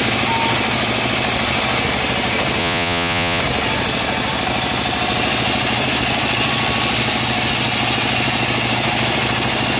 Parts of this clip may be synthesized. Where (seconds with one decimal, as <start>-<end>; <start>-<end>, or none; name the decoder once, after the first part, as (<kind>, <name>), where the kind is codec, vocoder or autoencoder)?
2.6-3.4 (vocoder, Vocos)